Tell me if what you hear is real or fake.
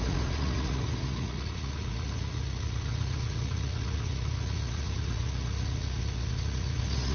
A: fake